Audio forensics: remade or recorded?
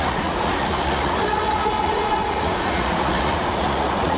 remade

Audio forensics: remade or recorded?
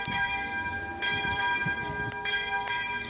remade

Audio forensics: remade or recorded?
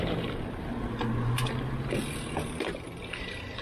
recorded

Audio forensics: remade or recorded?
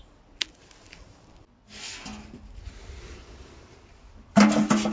recorded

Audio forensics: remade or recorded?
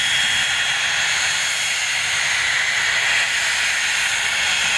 recorded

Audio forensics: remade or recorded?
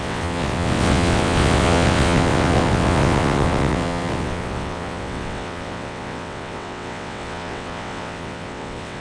remade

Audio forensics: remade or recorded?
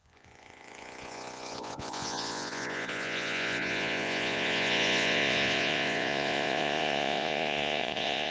remade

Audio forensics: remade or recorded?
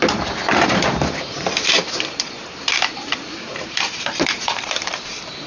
remade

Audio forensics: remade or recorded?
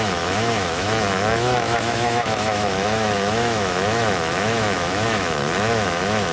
remade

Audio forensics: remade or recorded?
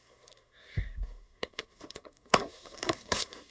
remade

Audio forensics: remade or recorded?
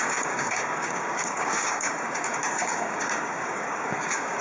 remade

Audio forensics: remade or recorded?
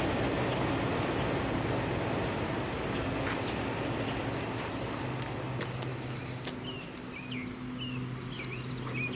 recorded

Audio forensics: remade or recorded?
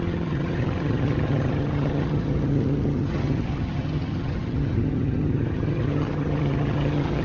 remade